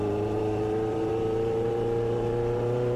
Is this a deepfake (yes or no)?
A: yes